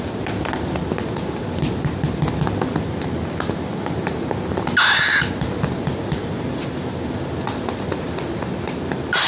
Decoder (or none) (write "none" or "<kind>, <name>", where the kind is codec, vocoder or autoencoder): none